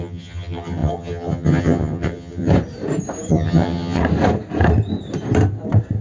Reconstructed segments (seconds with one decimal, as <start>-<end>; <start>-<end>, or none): 0.0-2.5; 3.3-4.0